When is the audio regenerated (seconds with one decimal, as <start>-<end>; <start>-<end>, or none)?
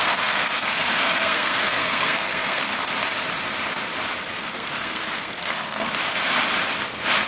0.0-2.9; 4.4-5.9